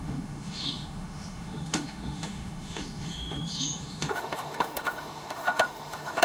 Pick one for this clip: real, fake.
fake